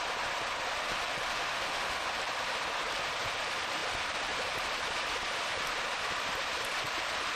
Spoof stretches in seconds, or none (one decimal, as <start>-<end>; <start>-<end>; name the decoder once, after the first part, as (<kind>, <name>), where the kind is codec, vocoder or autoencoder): 1.3-2.0 (autoencoder, DAC-VAE)